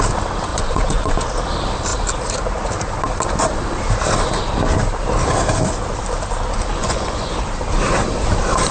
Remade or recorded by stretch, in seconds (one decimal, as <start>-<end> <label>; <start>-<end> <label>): 0.0-0.5 recorded; 0.5-1.2 remade; 1.2-6.8 recorded; 6.8-7.4 remade; 7.4-8.7 recorded